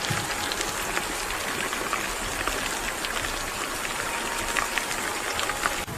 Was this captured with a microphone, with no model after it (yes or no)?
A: yes